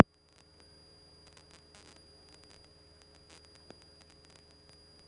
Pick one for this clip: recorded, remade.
recorded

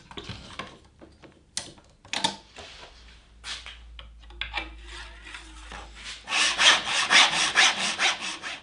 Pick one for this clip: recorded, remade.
recorded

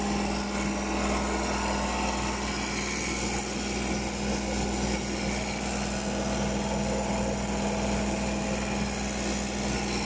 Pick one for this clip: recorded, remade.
recorded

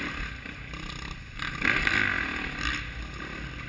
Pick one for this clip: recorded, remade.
recorded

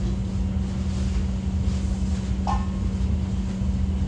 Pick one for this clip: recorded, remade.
recorded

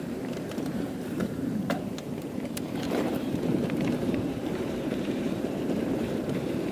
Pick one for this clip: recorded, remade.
remade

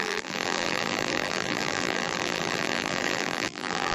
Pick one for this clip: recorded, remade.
remade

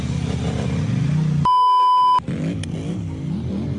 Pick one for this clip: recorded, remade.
recorded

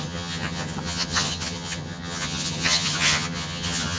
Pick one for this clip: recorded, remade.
remade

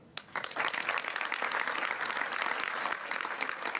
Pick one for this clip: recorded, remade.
recorded